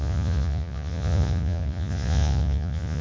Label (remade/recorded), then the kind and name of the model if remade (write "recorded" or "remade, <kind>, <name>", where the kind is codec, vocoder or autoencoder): remade, vocoder, Vocos